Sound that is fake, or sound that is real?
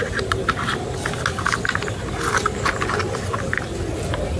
real